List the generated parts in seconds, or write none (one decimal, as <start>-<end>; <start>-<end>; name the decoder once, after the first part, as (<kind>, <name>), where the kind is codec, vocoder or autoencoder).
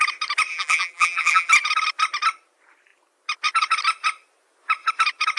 0.5-1.5 (vocoder, BigVGAN v2)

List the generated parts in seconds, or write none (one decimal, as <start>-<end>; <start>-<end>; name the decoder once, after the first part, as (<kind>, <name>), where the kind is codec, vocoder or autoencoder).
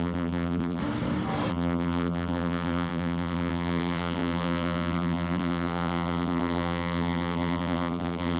0.0-0.8 (vocoder, BigVGAN v2); 1.5-8.4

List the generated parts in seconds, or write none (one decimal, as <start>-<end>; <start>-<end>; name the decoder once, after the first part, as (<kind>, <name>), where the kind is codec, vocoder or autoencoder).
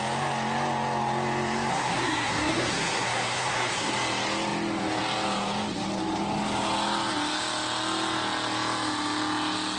1.7-3.9 (codec, SNAC)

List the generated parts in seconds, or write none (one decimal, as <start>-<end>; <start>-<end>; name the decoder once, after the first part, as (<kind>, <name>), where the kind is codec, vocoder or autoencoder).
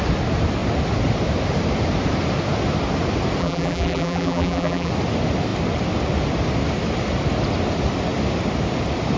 3.4-4.9 (vocoder, BigVGAN v2)